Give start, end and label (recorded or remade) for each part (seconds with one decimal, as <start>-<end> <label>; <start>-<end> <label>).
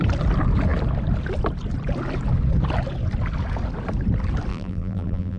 0.0-4.5 recorded; 4.5-5.4 remade